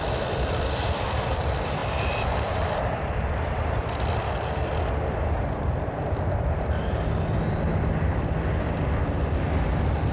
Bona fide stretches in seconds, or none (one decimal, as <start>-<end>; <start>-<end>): 0.0-10.1